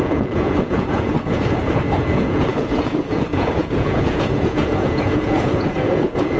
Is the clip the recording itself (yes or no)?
no